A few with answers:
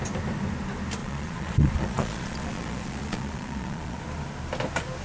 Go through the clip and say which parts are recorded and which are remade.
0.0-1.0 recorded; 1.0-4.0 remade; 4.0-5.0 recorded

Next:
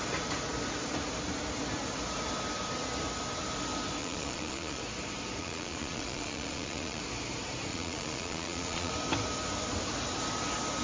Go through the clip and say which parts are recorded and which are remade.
0.0-4.0 recorded; 4.0-4.8 remade; 4.8-5.4 recorded; 5.4-7.0 remade; 7.0-7.7 recorded; 7.7-8.9 remade; 8.9-10.8 recorded